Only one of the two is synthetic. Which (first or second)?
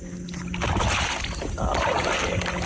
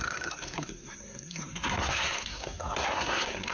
second